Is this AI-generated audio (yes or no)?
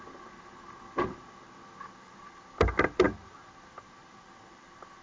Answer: no